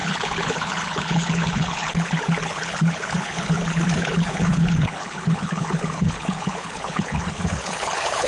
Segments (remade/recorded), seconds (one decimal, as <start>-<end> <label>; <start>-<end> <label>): 0.0-8.3 remade